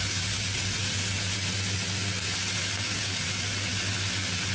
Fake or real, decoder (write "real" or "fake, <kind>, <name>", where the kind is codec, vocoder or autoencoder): real